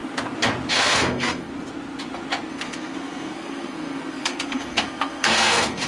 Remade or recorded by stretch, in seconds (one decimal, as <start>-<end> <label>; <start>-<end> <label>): 0.0-0.7 recorded; 0.7-1.5 remade; 1.5-2.5 recorded; 2.5-5.9 remade